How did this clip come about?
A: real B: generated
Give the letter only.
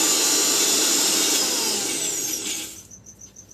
A